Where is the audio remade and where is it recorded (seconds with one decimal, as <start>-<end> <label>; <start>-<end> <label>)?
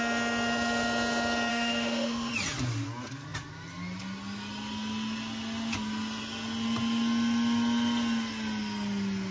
0.0-1.5 recorded; 1.5-2.3 remade; 2.3-9.3 recorded